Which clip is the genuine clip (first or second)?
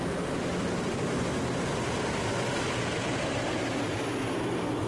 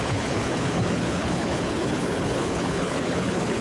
first